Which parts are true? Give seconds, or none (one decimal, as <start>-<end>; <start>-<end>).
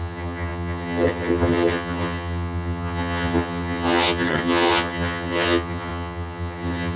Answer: none